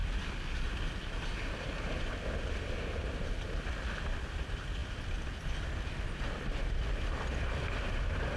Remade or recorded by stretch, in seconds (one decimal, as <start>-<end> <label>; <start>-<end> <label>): 0.0-8.4 recorded